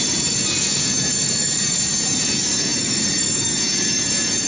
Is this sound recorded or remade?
remade